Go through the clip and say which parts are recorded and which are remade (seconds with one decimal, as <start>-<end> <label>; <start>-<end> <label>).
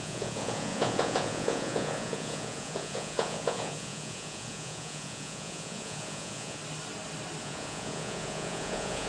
0.0-6.6 remade; 6.6-7.4 recorded; 7.4-9.1 remade